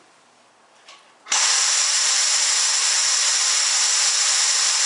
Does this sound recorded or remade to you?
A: recorded